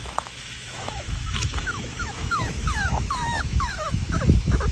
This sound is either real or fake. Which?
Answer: fake